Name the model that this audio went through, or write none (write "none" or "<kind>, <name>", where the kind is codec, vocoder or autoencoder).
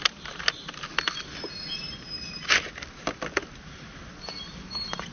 none